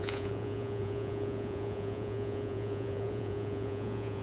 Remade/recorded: remade